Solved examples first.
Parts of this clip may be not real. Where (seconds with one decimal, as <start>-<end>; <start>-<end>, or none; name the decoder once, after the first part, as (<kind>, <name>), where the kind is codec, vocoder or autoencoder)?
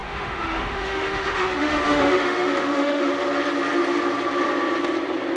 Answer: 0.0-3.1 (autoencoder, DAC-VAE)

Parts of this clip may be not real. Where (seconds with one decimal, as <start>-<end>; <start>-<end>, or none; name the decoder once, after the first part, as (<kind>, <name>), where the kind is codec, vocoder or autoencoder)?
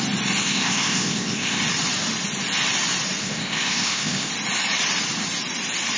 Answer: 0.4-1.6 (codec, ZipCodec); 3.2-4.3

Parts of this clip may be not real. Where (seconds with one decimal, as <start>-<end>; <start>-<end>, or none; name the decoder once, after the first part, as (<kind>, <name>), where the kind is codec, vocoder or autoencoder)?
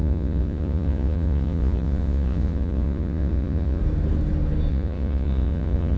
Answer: 0.0-3.8 (vocoder, Vocos); 4.7-6.0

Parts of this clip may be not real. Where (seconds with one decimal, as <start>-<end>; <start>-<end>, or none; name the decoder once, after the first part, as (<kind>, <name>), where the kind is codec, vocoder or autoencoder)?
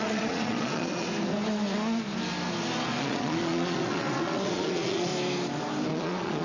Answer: 0.0-1.1 (vocoder, Vocos); 3.0-5.1; 5.9-6.4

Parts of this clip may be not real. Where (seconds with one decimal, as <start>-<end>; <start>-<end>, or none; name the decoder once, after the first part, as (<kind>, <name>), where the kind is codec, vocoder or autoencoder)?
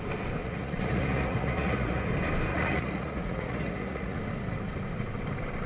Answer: 0.4-2.1 (vocoder, Vocos); 2.5-4.2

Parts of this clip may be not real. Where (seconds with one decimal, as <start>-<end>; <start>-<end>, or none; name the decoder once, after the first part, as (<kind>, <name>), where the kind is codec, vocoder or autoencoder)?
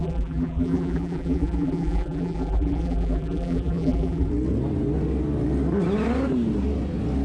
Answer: 0.0-4.3 (vocoder, BigVGAN v2)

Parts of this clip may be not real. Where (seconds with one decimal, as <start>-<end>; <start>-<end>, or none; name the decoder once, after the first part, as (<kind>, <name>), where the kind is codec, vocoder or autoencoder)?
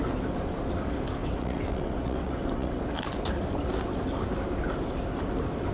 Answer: 1.2-2.8 (vocoder, WaveNeXt)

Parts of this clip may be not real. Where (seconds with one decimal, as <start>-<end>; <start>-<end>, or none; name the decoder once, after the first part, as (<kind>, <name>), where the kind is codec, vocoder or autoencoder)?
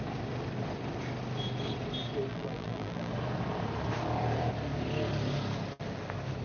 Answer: 2.3-3.1 (vocoder, BigVGAN v2)